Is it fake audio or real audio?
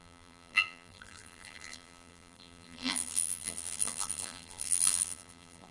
fake